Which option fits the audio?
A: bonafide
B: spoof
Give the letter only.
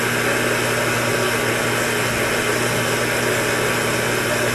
A